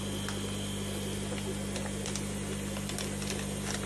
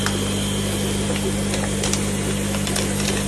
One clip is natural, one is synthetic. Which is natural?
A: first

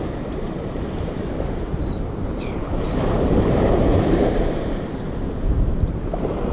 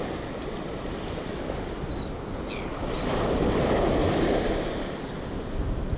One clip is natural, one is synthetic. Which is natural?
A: second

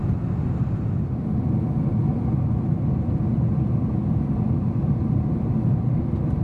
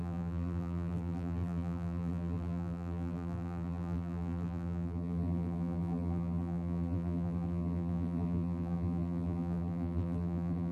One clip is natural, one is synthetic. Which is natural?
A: first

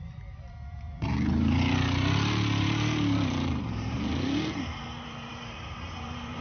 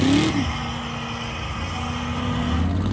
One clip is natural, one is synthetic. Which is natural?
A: second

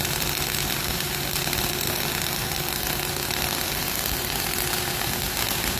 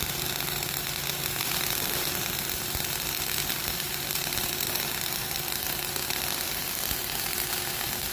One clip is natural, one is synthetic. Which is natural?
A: first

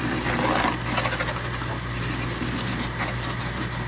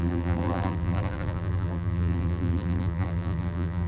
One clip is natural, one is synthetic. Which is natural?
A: first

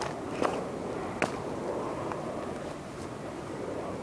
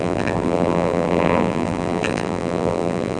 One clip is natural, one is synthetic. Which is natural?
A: first